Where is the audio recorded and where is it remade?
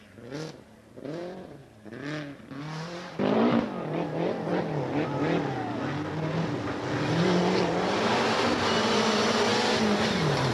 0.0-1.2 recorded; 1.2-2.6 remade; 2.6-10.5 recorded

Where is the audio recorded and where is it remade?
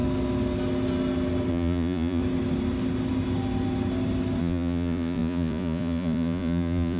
0.0-1.5 recorded; 1.5-2.2 remade; 2.2-4.4 recorded; 4.4-7.0 remade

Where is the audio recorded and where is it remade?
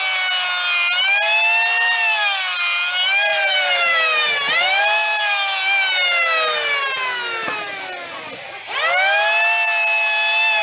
0.0-3.3 recorded; 3.3-4.8 remade; 4.8-7.4 recorded; 7.4-8.0 remade; 8.0-10.6 recorded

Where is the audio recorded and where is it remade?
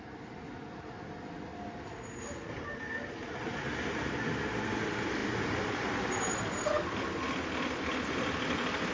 0.0-8.9 recorded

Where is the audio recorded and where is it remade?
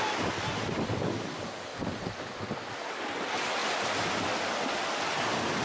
0.0-5.6 recorded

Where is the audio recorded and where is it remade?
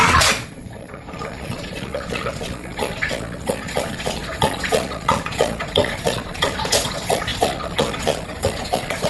0.0-9.1 remade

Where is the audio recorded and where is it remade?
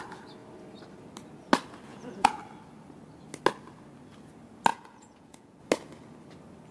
0.0-1.9 recorded; 1.9-2.4 remade; 2.4-4.7 recorded; 4.7-5.6 remade; 5.6-6.7 recorded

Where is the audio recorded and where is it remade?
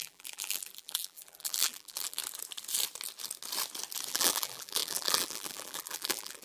0.0-2.2 remade; 2.2-4.1 recorded; 4.1-6.4 remade